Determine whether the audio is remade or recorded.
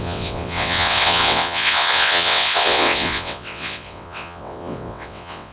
remade